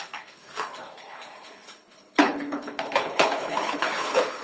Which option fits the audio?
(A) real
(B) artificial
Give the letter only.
B